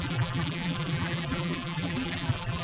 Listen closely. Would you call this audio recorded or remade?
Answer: remade